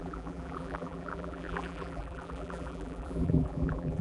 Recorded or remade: remade